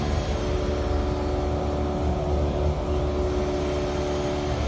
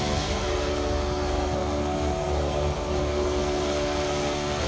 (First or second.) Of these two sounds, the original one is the first